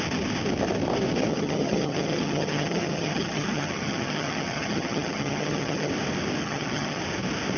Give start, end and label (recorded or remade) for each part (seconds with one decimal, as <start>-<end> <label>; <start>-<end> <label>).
0.0-1.3 recorded; 1.3-5.9 remade; 5.9-6.4 recorded; 6.4-7.0 remade; 7.0-7.6 recorded